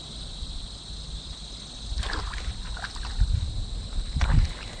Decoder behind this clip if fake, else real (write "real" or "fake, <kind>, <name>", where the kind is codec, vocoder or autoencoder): real